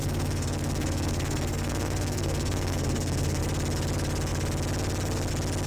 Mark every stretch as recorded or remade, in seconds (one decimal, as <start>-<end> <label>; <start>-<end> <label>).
0.0-3.4 remade; 3.4-5.7 recorded